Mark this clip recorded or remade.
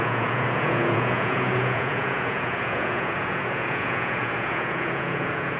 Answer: remade